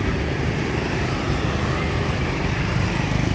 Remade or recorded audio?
recorded